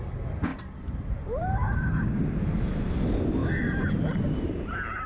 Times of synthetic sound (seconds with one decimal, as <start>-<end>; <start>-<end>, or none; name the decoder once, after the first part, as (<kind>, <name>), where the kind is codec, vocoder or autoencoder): 0.5-2.9 (vocoder, BigVGAN v2)